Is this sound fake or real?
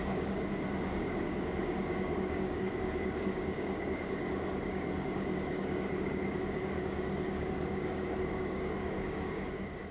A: fake